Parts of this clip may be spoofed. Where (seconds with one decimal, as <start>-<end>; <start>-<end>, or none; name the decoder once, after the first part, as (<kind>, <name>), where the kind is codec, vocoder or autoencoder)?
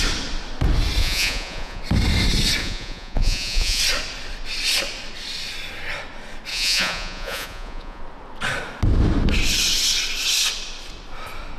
1.0-1.8 (vocoder, Vocos); 2.6-3.8; 6.5-8.0